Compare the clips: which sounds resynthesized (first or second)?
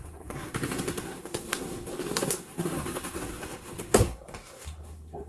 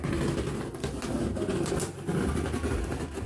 first